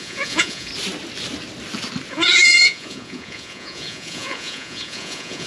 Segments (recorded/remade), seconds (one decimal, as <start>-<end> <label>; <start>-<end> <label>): 0.0-0.7 remade; 0.7-2.1 recorded; 2.1-5.5 remade